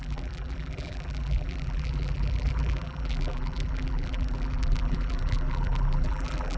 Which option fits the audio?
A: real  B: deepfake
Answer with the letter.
B